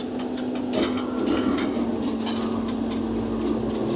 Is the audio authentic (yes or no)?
yes